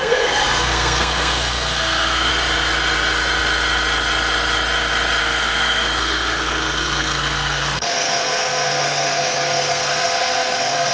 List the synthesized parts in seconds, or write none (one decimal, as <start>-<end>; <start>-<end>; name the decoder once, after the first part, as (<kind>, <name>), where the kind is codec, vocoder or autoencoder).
0.0-2.3 (codec, SNAC); 5.2-10.9